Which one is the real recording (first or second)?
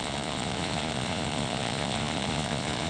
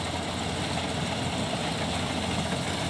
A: second